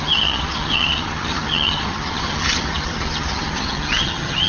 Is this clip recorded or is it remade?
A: remade